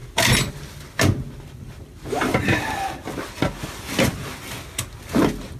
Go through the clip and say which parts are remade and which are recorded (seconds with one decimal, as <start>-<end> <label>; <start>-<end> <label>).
0.0-5.6 recorded

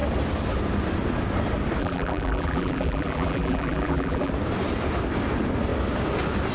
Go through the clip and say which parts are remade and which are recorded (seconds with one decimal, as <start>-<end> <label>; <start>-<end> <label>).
0.0-1.8 recorded; 1.8-4.3 remade; 4.3-6.5 recorded

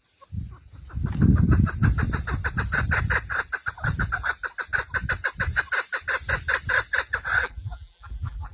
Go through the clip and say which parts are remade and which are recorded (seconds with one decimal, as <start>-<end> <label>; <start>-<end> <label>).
0.0-7.4 recorded; 7.4-8.5 remade

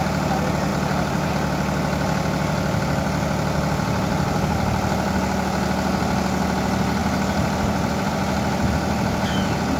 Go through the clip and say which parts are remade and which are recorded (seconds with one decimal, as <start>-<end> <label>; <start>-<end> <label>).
0.0-0.7 recorded; 0.7-1.3 remade; 1.3-9.8 recorded